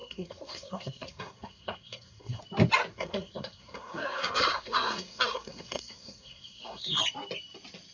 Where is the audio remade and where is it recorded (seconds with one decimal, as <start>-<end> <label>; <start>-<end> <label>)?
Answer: 0.0-2.4 remade; 2.4-2.9 recorded; 2.9-7.0 remade; 7.0-7.9 recorded